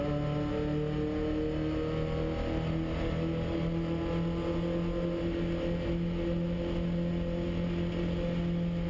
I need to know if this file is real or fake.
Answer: real